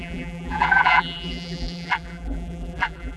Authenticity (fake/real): fake